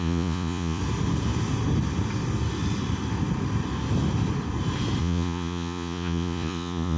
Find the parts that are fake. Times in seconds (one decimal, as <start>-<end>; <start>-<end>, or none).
0.0-0.8; 5.0-7.0